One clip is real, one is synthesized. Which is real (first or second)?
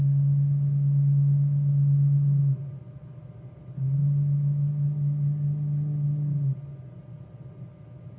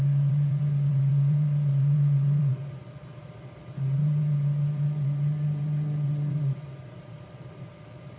first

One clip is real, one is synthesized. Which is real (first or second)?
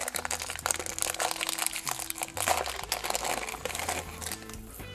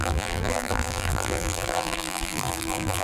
first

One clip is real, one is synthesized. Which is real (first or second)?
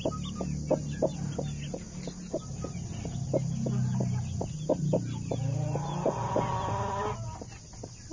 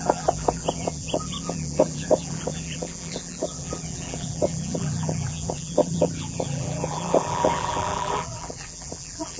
first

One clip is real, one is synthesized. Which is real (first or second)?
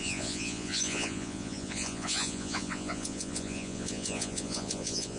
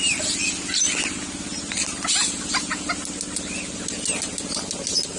second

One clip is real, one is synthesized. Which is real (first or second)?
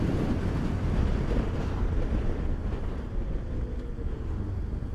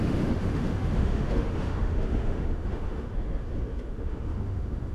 first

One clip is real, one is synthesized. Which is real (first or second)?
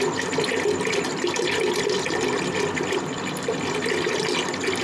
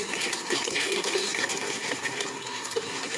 first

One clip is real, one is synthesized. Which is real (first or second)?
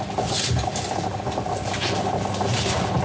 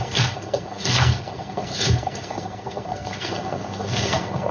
first